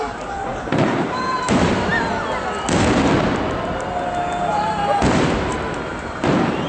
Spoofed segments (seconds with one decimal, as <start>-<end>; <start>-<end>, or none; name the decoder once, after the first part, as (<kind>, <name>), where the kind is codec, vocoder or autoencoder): 0.0-1.9 (vocoder, BigVGAN v2); 5.9-6.7